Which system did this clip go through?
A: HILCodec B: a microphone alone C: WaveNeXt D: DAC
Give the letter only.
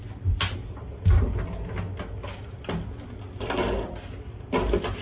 B